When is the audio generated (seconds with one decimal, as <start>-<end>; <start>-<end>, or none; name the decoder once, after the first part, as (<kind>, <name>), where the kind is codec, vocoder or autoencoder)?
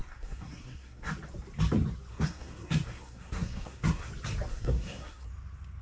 0.0-1.1 (codec, SNAC); 2.1-4.1; 4.5-5.3